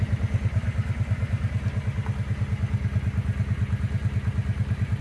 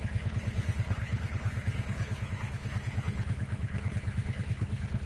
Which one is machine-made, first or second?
second